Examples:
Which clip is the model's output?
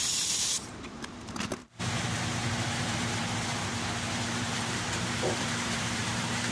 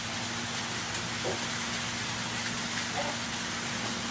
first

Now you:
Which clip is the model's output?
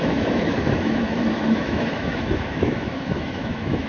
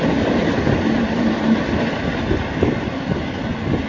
first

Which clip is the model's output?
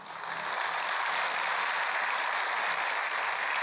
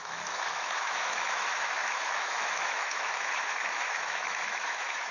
second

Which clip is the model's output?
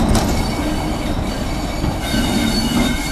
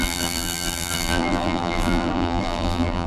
second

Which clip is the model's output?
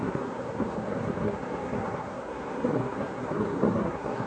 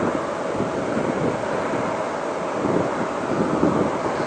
first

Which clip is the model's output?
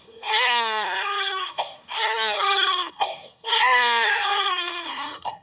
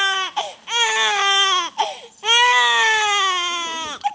first